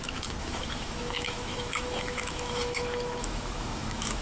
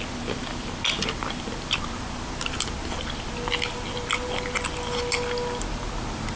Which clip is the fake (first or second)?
first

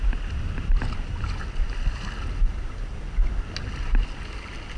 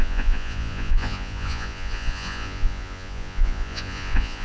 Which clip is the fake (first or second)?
second